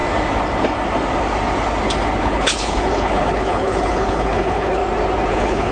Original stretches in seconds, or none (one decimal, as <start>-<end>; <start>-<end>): 0.0-2.2; 4.8-5.3